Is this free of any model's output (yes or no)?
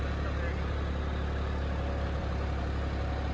yes